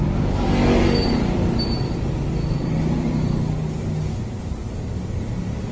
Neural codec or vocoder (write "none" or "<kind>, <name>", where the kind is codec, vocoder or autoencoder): none